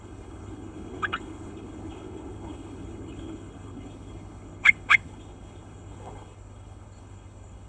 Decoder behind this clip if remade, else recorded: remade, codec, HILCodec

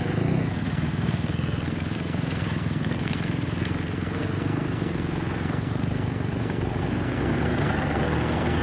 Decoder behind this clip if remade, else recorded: remade, codec, SNAC